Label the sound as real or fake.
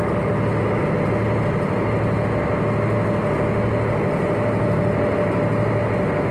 real